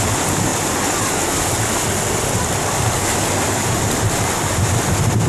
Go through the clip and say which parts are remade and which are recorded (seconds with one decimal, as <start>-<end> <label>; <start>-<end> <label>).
0.0-5.3 recorded